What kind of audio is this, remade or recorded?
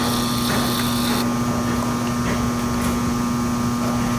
recorded